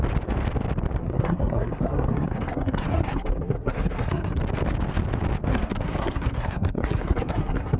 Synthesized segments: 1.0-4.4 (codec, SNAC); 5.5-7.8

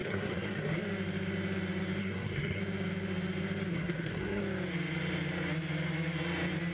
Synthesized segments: 0.0-0.8 (codec, SNAC); 2.0-2.6; 3.7-4.4

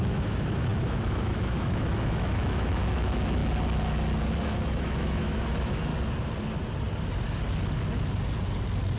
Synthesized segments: 0.0-3.4 (autoencoder, DAC-VAE); 4.7-5.9

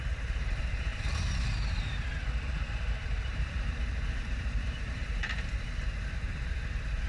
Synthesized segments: 0.0-7.1 (vocoder, BigVGAN v2)

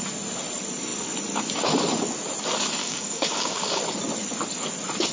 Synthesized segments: 2.8-3.8 (codec, DAC)

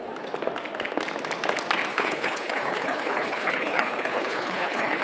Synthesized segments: 1.9-5.0 (codec, HILCodec)